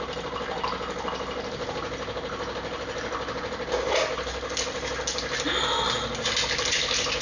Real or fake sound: real